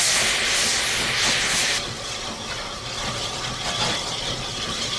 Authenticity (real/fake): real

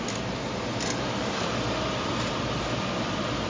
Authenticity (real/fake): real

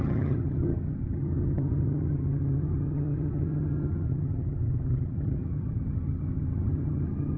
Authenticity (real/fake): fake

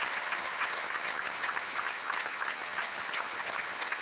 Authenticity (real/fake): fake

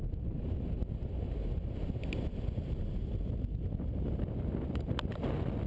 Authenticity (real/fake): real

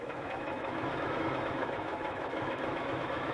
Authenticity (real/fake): fake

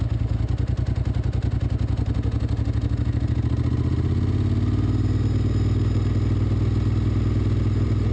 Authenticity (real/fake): real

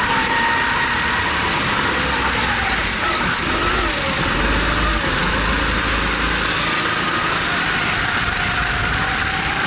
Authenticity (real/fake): real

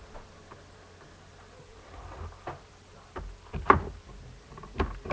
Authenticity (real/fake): real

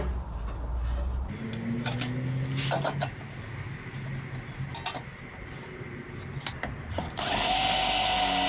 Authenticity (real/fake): real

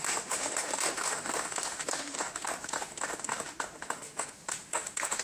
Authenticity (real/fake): fake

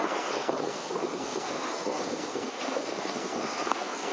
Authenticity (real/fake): fake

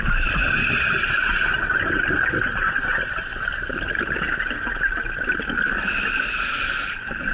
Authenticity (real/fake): real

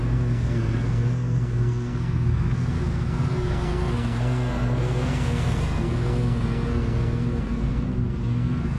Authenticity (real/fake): fake